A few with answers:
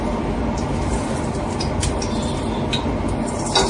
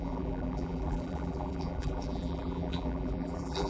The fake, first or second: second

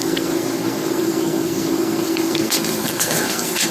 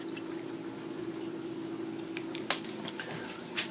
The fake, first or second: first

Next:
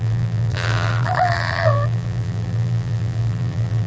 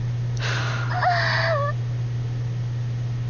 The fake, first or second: first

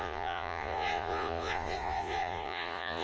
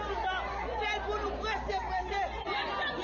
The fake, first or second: first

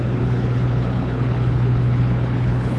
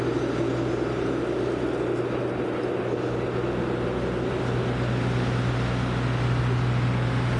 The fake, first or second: first